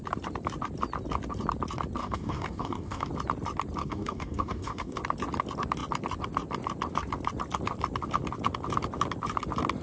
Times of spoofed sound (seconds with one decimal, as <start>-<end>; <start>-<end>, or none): 2.0-3.1; 3.8-5.0